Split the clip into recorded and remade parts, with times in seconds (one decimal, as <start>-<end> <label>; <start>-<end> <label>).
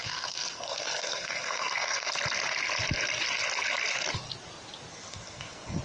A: 0.0-2.1 remade; 2.1-4.9 recorded; 4.9-5.8 remade